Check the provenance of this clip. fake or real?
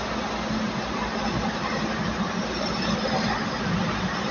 real